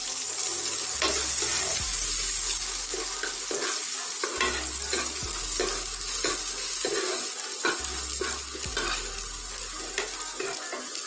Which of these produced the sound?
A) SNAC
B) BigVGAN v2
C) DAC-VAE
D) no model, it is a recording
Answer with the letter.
D